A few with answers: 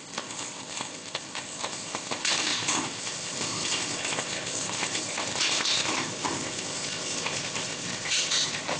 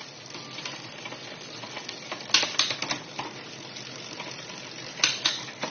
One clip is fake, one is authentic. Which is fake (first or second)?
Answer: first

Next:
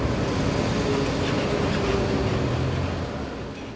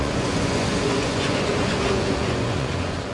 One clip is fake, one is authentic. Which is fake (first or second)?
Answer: second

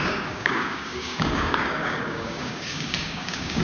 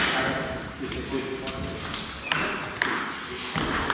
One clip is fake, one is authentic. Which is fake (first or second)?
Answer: first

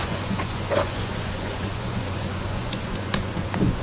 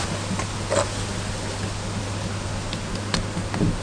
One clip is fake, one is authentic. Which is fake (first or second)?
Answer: first